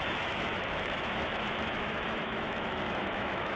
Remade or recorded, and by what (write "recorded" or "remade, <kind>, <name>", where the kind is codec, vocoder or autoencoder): remade, autoencoder, DAC-VAE